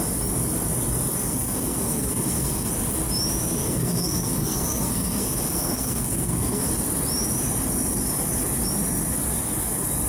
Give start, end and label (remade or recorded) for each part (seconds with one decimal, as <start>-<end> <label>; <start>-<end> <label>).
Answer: 0.0-1.2 recorded; 1.2-2.7 remade; 2.7-3.6 recorded; 3.6-6.7 remade; 6.7-10.1 recorded